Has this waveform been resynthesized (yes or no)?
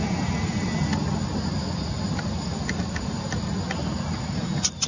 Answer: no